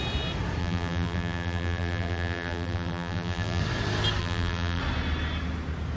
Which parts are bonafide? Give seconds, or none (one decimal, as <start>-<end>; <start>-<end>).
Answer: 0.0-0.6; 3.6-4.2; 4.8-6.0